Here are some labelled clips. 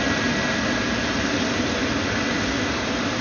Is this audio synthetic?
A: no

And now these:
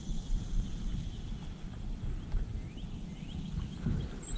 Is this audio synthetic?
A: no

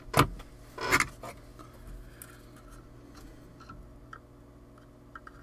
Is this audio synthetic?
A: no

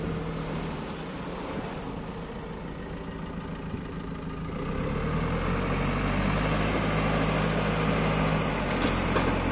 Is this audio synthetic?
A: no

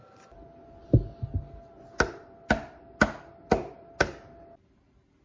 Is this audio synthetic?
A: no